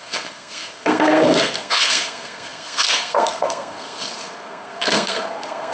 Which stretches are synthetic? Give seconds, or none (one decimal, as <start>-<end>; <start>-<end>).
0.0-5.7